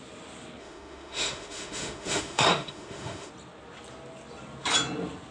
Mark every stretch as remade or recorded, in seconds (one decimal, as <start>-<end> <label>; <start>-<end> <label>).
0.0-0.6 recorded; 0.6-3.3 remade; 3.3-5.3 recorded